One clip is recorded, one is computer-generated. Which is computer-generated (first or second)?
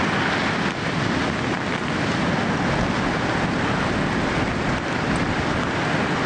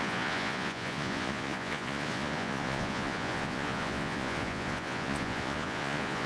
second